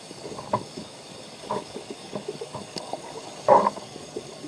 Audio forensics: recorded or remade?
remade